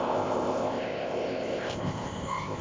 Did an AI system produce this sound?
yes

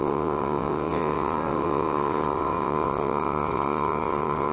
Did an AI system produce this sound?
yes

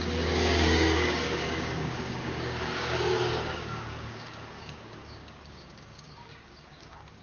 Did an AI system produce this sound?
yes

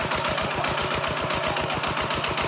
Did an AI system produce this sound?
no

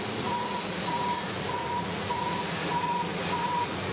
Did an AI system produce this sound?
yes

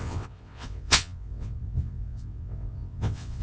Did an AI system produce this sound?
yes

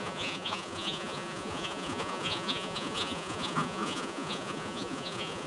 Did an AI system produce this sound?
yes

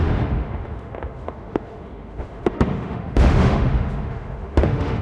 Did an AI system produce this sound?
yes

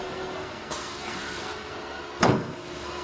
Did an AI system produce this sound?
yes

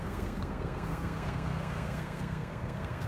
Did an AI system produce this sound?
yes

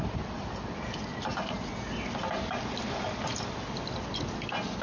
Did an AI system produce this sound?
no